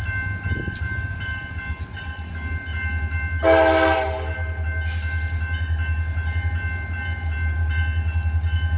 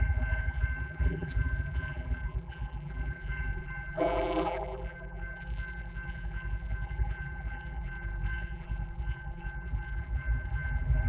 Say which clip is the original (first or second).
first